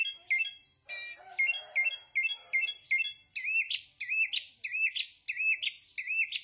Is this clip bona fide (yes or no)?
yes